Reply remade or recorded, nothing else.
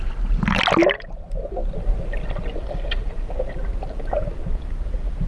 recorded